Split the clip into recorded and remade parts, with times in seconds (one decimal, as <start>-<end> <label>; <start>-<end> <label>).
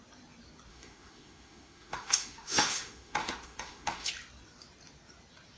0.0-0.7 recorded; 0.7-4.1 remade; 4.1-5.6 recorded